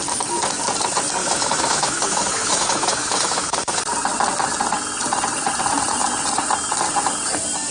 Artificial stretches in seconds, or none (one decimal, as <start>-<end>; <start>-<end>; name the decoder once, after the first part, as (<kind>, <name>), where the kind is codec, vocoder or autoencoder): 1.2-3.8 (autoencoder, DAC-VAE)